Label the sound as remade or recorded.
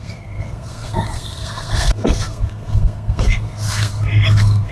remade